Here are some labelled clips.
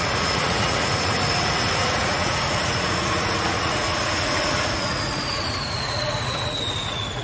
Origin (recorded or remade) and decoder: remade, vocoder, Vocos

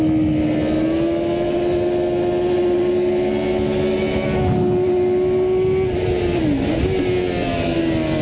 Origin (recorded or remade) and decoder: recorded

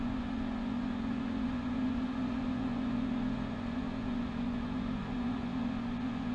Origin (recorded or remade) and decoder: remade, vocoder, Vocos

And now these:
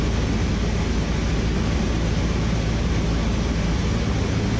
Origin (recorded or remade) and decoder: recorded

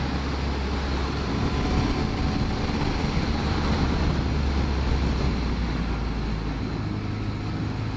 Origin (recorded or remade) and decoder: recorded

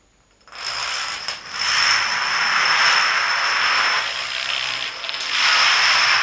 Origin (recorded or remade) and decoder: recorded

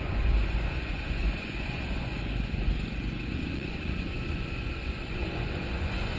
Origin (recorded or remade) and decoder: remade, vocoder, Vocos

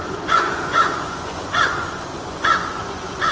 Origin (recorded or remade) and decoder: remade, vocoder, Vocos